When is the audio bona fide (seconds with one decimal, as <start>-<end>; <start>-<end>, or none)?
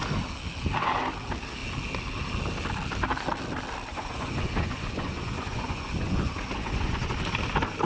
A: 0.0-3.9; 7.1-7.8